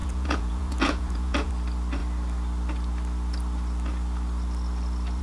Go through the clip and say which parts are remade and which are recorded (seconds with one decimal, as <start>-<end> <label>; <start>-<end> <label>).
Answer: 0.0-1.5 remade; 1.5-5.2 recorded